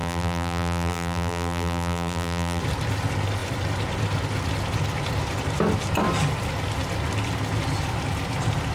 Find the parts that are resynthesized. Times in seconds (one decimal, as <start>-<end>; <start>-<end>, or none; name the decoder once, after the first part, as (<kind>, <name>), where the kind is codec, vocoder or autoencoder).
0.0-2.6 (vocoder, BigVGAN v2)